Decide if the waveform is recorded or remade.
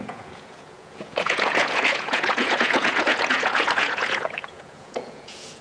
remade